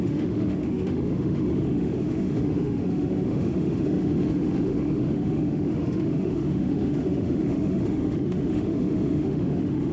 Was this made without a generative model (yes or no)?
no